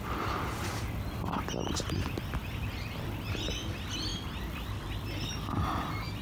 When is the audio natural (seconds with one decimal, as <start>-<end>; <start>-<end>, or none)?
0.0-6.2